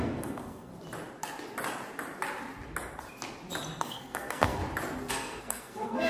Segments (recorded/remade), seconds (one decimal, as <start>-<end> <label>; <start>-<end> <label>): 0.0-0.7 remade; 0.7-3.8 recorded; 3.8-4.6 remade; 4.6-5.1 recorded; 5.1-6.1 remade